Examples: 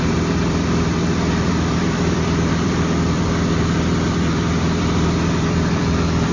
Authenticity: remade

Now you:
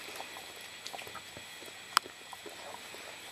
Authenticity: recorded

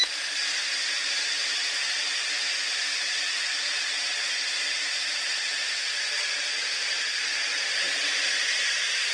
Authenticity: remade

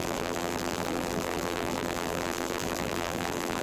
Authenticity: remade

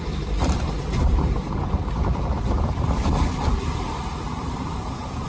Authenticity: remade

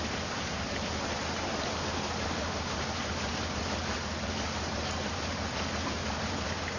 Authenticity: remade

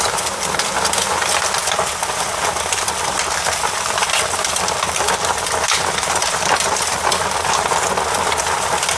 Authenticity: remade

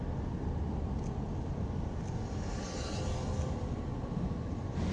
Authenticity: recorded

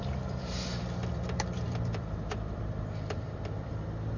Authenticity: remade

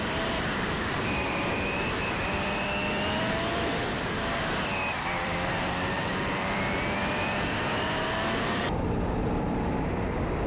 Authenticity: remade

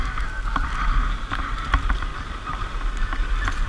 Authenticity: recorded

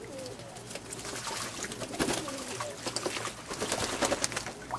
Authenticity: recorded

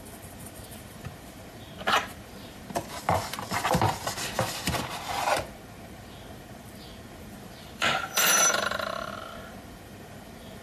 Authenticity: remade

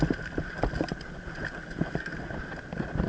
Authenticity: recorded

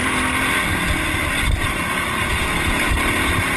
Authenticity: recorded